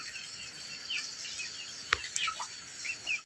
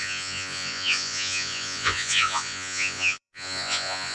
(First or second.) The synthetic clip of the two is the second